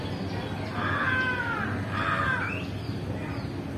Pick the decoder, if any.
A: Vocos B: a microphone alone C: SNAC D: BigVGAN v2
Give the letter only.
B